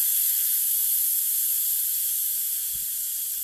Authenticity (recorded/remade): recorded